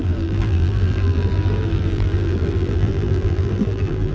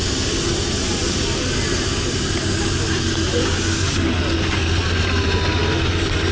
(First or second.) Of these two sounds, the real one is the second